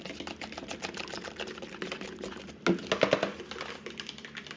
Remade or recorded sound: recorded